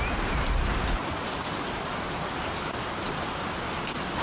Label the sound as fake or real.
real